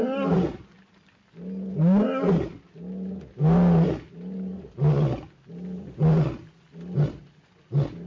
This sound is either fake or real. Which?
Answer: real